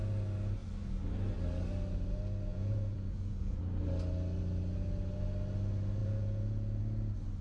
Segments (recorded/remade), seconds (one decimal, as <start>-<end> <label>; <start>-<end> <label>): 0.0-2.5 recorded; 2.5-3.6 remade; 3.6-6.0 recorded; 6.0-6.8 remade; 6.8-7.4 recorded